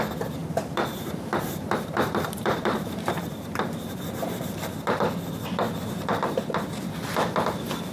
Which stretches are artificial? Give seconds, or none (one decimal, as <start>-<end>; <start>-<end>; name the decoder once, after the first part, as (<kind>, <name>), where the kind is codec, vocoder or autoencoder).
0.4-4.0 (vocoder, BigVGAN v2)